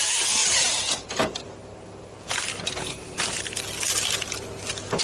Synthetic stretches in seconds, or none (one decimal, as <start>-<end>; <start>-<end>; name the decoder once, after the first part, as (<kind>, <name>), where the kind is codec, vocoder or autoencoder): none